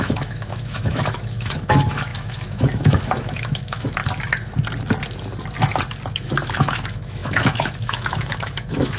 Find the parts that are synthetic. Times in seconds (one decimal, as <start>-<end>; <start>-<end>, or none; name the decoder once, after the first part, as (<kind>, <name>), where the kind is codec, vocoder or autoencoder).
0.0-4.0 (autoencoder, DAC-VAE); 6.1-9.0